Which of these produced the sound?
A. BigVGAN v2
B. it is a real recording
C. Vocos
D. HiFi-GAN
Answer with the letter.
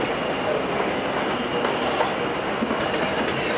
B